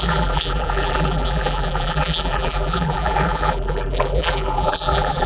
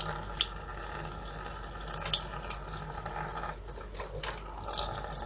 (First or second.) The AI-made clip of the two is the first